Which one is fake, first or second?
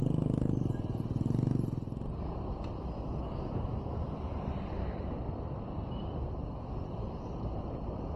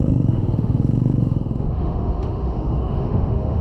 second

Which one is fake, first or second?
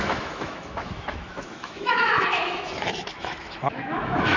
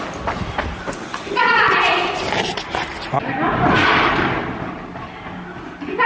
first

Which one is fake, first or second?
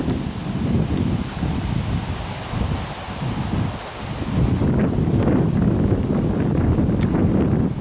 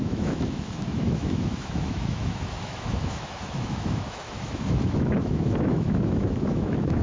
second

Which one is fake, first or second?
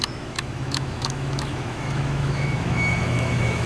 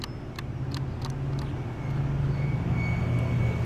first